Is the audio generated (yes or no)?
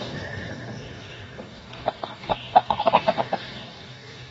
yes